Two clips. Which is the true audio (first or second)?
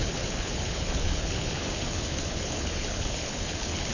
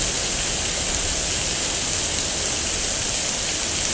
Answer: second